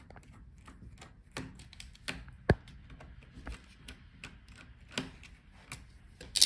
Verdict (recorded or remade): recorded